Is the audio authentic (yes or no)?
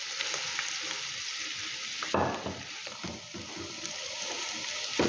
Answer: yes